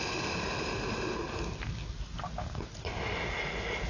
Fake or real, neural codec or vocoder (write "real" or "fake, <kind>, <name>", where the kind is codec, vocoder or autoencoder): real